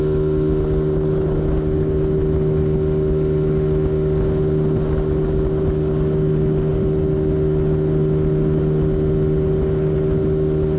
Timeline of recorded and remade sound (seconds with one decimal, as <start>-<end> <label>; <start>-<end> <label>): 0.0-10.8 recorded